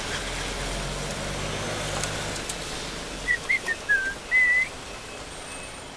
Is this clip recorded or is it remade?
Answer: recorded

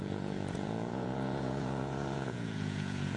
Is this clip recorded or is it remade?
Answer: remade